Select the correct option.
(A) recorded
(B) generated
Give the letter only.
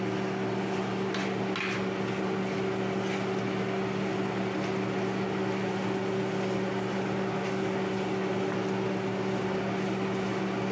A